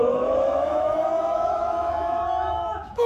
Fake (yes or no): yes